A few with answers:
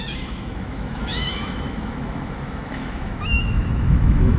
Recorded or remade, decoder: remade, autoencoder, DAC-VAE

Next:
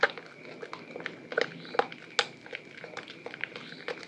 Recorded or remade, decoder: recorded